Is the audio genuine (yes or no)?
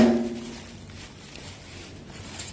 yes